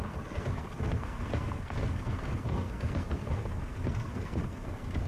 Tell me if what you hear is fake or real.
fake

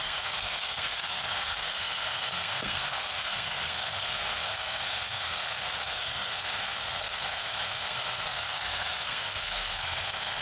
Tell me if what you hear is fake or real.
fake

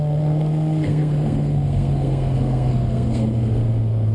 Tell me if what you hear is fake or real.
fake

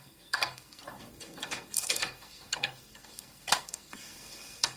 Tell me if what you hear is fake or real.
fake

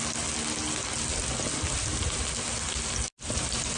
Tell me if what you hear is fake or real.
real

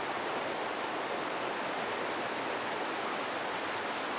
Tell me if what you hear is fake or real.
real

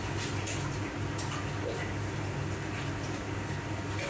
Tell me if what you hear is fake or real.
real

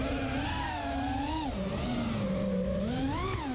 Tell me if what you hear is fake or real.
real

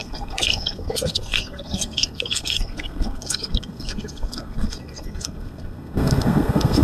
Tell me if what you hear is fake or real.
fake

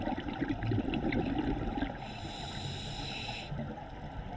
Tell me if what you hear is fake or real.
real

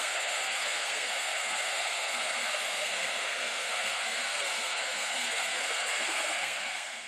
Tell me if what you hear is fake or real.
fake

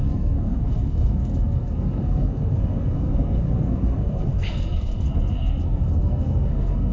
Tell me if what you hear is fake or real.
fake